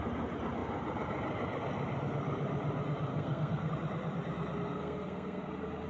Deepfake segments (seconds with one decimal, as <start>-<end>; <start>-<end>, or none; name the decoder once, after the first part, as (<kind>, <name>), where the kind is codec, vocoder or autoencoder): 3.1-3.7 (codec, SNAC); 4.7-5.5